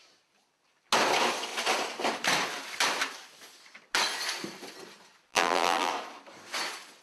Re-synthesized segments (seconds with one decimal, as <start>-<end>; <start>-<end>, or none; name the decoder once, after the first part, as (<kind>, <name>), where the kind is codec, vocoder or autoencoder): 5.3-5.9 (vocoder, BigVGAN v2)